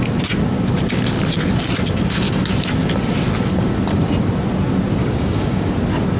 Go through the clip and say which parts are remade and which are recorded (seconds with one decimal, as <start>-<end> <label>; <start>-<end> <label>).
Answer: 0.0-5.0 recorded; 5.0-5.7 remade; 5.7-6.2 recorded